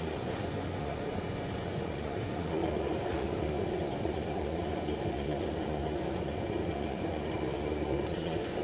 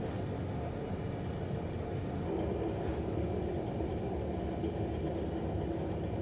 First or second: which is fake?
first